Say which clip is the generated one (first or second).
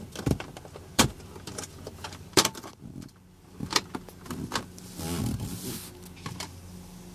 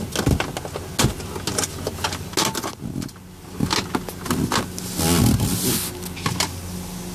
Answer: first